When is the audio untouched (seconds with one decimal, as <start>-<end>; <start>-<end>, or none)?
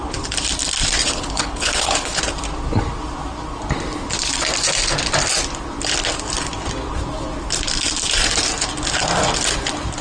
0.0-1.0; 2.2-10.0